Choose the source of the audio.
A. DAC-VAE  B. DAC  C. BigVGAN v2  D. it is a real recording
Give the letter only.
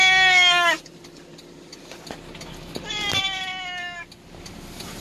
D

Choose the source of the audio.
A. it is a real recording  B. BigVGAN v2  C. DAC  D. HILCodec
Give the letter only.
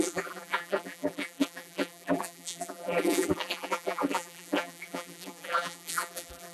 B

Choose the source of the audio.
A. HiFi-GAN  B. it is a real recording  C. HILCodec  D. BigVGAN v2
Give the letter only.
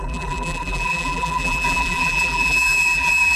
D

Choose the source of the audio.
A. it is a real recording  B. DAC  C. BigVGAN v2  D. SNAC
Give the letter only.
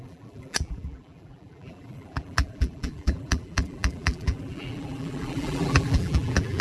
C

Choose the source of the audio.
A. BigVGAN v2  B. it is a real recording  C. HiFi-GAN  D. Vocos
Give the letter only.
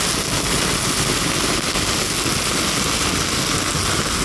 B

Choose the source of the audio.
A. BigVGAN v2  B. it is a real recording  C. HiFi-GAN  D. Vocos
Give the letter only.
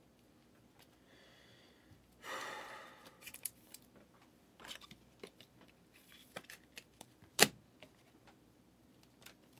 A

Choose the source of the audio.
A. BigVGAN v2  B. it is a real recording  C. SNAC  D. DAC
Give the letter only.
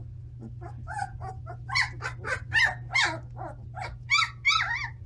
B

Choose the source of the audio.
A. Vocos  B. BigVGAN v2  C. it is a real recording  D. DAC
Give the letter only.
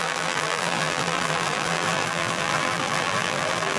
B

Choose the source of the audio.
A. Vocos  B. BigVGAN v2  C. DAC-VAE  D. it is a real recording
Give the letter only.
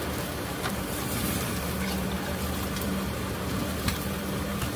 B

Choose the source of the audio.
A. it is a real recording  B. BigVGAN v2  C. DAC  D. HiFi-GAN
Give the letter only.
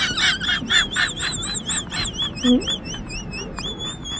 A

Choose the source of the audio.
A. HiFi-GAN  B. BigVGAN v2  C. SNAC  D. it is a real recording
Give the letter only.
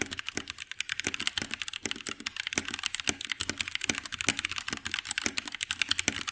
D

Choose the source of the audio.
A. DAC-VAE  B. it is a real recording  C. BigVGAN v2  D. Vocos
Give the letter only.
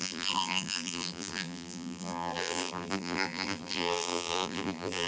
C